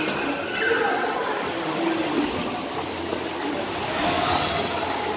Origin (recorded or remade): recorded